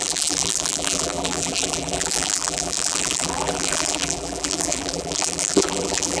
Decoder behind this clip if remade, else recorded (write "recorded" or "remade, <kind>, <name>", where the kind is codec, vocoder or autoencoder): remade, vocoder, BigVGAN v2